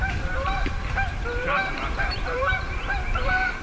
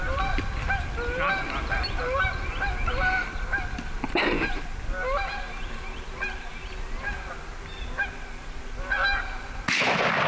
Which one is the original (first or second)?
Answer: second